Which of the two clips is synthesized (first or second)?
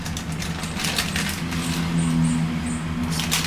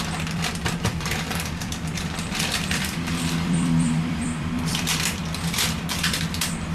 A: second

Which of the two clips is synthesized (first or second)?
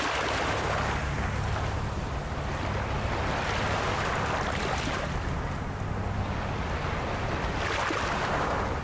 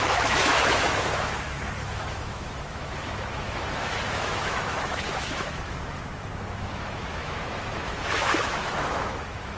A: second